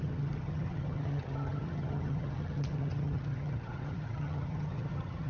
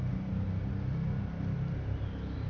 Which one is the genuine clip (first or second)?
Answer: second